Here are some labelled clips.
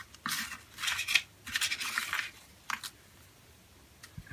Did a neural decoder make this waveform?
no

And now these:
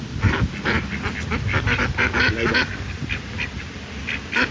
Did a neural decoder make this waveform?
no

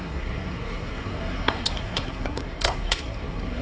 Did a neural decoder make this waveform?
yes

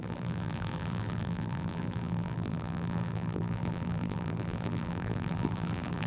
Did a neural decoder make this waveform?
yes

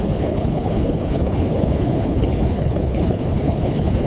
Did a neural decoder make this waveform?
yes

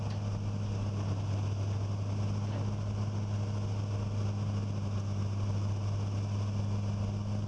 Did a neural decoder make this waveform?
no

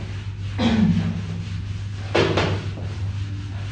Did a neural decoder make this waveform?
no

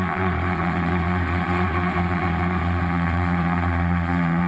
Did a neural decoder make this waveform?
yes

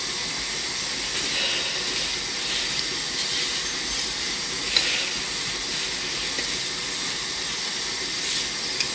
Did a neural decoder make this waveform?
no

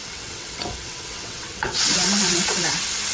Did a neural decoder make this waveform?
yes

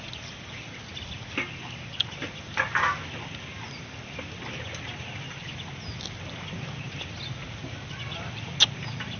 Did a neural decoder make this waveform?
no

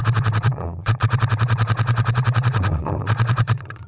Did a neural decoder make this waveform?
yes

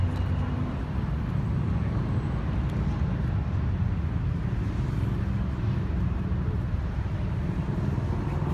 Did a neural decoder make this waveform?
no